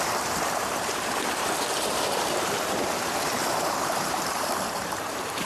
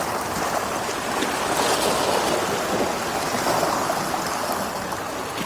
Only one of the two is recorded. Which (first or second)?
second